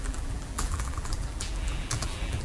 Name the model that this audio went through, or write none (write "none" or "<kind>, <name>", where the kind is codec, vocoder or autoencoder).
vocoder, BigVGAN v2